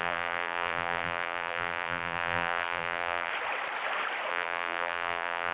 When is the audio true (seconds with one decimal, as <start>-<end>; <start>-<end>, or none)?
3.3-4.3